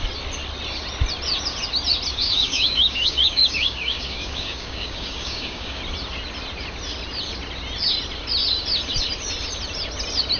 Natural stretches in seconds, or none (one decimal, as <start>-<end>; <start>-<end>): 0.0-2.1; 5.8-10.4